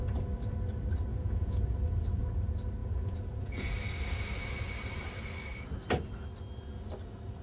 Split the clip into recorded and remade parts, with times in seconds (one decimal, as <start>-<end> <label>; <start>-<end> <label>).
0.0-1.1 recorded; 1.1-1.8 remade; 1.8-2.8 recorded; 2.8-3.7 remade; 3.7-7.4 recorded

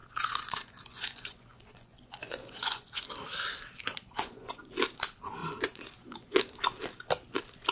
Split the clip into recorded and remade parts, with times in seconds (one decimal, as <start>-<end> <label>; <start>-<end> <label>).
0.0-3.1 remade; 3.1-3.9 recorded; 3.9-4.7 remade; 4.7-5.4 recorded; 5.4-6.4 remade; 6.4-7.7 recorded